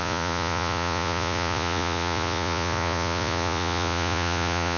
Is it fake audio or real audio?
fake